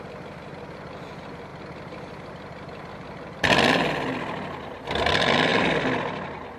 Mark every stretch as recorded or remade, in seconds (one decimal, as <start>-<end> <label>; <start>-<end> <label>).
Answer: 0.0-1.5 recorded; 1.5-5.1 remade; 5.1-6.6 recorded